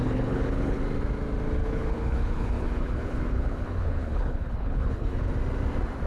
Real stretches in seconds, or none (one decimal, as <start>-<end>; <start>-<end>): 0.8-1.6; 5.3-6.1